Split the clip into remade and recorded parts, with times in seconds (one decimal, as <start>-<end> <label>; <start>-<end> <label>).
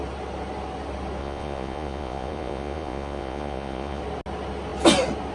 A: 0.0-1.2 recorded; 1.2-4.0 remade; 4.0-5.3 recorded